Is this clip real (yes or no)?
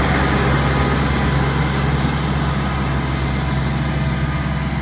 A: yes